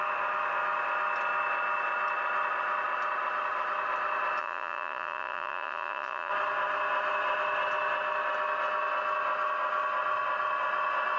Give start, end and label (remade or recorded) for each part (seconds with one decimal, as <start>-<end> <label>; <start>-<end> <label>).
0.0-4.4 recorded; 4.4-6.3 remade; 6.3-11.2 recorded